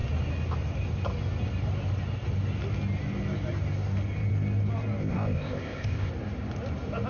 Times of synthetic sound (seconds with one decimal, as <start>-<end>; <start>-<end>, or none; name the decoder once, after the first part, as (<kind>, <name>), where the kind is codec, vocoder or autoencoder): 5.0-6.1 (codec, ZipCodec)

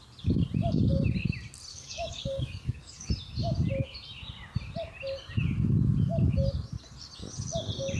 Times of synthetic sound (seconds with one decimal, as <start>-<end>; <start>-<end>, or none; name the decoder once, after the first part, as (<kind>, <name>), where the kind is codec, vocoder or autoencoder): 1.7-3.1 (codec, DAC)

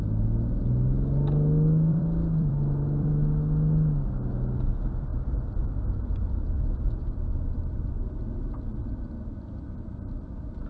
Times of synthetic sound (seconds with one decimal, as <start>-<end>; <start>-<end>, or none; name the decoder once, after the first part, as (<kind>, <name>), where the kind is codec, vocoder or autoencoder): 1.9-3.1 (vocoder, BigVGAN v2); 5.1-7.9; 8.8-10.7

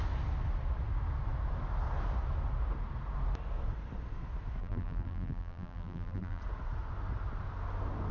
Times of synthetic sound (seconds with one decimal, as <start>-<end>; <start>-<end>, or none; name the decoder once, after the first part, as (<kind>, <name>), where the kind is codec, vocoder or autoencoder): 4.6-6.4 (vocoder, BigVGAN v2)

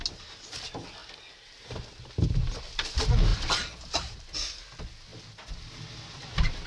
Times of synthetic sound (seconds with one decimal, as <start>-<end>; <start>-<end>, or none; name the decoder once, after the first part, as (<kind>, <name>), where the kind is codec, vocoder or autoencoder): 3.3-4.2 (vocoder, BigVGAN v2)

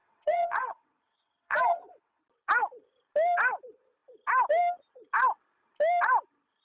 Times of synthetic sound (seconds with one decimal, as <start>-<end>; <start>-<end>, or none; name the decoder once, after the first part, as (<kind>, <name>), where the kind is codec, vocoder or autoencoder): 0.0-2.2 (vocoder, WaveNeXt)

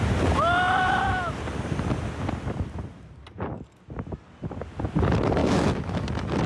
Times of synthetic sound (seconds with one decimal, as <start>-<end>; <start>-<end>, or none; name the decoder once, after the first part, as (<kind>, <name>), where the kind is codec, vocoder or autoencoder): 5.4-6.1 (autoencoder, DAC-VAE)